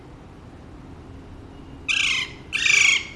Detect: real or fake real